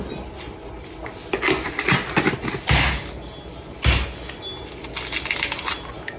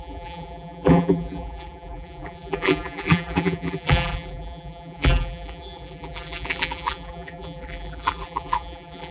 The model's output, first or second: second